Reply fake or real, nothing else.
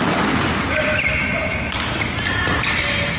real